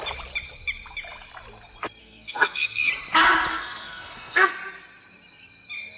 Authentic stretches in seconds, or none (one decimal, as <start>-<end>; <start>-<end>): 0.0-2.0; 2.9-3.5; 4.5-6.0